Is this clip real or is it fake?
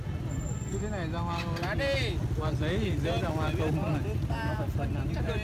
real